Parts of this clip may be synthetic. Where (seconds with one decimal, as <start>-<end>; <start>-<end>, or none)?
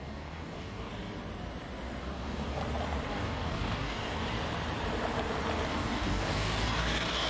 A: 0.0-0.9; 2.0-2.6; 3.1-4.2; 5.7-7.3